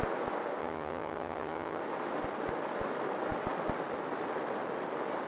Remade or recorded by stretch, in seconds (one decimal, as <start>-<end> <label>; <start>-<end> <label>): 0.0-0.6 recorded; 0.6-1.8 remade; 1.8-5.3 recorded